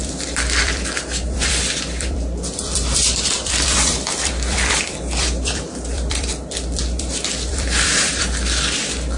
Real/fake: fake